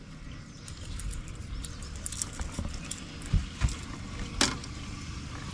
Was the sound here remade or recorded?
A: recorded